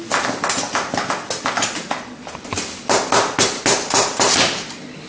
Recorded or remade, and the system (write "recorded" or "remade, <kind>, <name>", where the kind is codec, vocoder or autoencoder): recorded